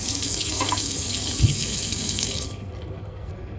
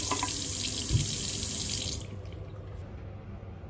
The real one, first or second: second